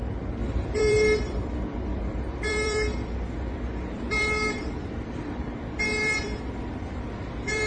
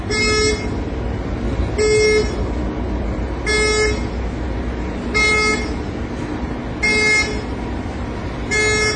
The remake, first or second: first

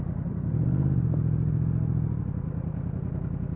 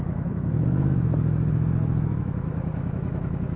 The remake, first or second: second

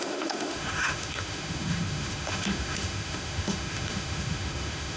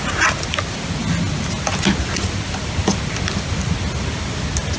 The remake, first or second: first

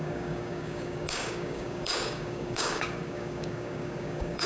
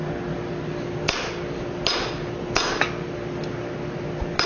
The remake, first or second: first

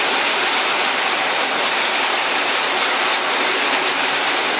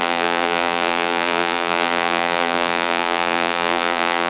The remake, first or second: second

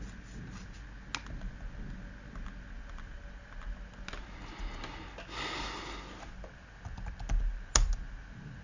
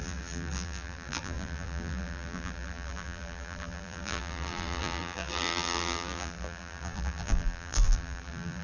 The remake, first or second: second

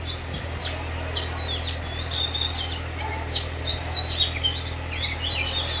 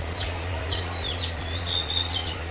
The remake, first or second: second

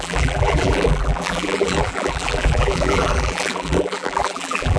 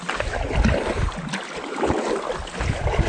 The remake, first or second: first